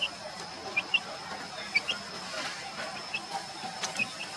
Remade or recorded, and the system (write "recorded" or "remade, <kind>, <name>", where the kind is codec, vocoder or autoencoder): recorded